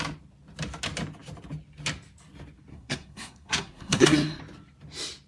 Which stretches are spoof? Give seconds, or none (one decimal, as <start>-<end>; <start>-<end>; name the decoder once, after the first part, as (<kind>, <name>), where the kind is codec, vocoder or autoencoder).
2.7-4.4 (codec, SNAC)